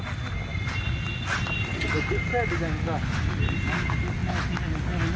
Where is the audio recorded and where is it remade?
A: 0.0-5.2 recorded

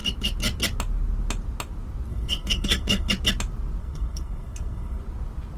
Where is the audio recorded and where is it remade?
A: 0.0-2.1 recorded; 2.1-3.1 remade; 3.1-3.8 recorded; 3.8-5.0 remade; 5.0-5.6 recorded